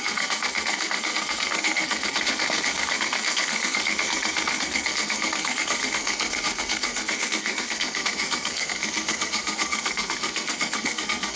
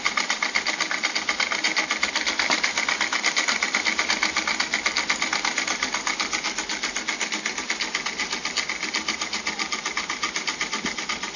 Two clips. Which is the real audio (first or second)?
second